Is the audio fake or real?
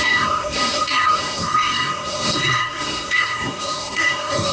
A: fake